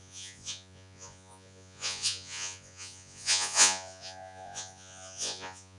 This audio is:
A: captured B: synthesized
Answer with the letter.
B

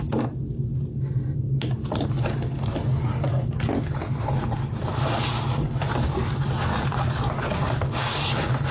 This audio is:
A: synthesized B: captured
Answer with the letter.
B